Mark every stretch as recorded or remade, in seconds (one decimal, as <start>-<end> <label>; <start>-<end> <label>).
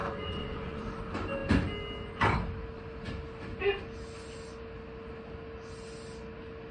0.0-0.8 remade; 0.8-6.7 recorded